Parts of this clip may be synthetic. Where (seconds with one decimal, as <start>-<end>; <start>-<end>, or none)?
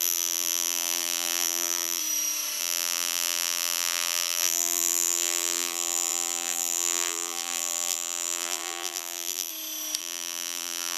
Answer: 0.0-2.0; 2.6-9.5; 10.0-11.0